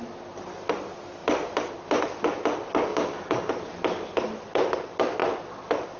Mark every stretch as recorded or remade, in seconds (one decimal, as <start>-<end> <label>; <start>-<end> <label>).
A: 0.0-2.9 recorded; 2.9-3.5 remade; 3.5-6.0 recorded